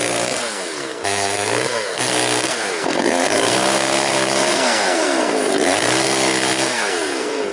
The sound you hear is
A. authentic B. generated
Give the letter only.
B